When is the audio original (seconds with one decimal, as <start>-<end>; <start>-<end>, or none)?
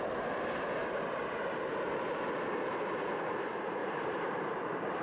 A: 0.0-0.8; 1.7-3.8